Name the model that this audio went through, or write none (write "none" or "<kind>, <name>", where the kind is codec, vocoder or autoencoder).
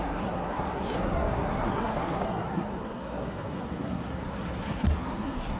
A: codec, SNAC